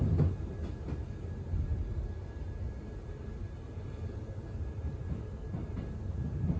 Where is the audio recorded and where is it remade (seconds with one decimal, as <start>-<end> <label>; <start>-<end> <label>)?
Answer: 0.0-6.6 recorded